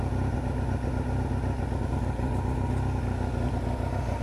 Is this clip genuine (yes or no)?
yes